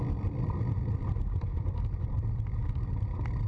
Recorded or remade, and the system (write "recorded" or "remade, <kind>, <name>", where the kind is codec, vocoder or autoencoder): recorded